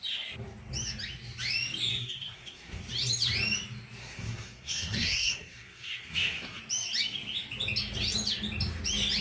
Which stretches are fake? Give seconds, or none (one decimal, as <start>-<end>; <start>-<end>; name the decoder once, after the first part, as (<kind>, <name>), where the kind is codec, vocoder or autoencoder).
1.9-2.8 (codec, SNAC); 4.0-6.6

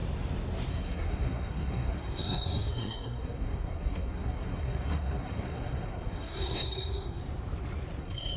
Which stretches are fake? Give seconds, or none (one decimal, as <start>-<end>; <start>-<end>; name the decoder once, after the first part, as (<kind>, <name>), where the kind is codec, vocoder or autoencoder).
0.7-7.2 (codec, SNAC); 8.0-8.4

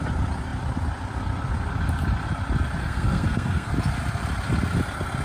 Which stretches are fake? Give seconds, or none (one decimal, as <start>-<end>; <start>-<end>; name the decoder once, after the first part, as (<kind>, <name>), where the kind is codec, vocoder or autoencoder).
2.8-3.7 (codec, SNAC)